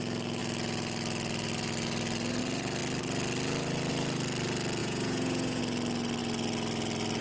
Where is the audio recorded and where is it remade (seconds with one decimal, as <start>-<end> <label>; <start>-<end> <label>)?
0.0-4.8 recorded; 4.8-5.6 remade; 5.6-7.2 recorded